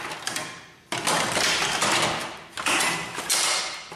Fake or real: real